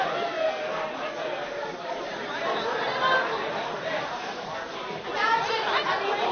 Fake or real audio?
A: real